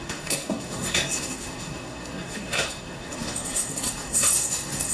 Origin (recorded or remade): remade